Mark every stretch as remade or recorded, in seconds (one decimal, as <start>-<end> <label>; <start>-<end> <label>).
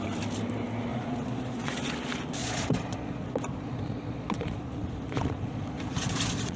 0.0-0.9 recorded; 0.9-1.7 remade; 1.7-2.4 recorded; 2.4-6.6 remade